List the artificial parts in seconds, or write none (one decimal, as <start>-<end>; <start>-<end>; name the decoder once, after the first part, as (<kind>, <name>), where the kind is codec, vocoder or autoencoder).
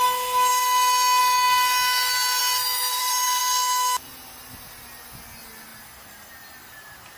2.4-3.4 (vocoder, BigVGAN v2); 5.7-6.8